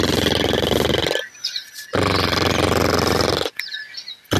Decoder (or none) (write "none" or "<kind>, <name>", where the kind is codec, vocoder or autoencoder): none